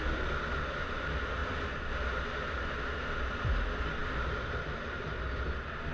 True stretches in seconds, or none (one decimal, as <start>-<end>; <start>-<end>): 0.0-5.9